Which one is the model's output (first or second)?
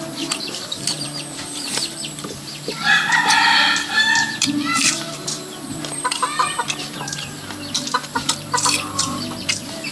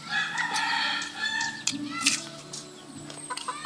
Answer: first